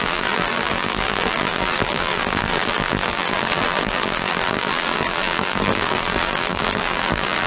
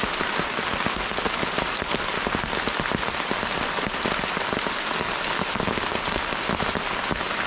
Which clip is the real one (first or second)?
second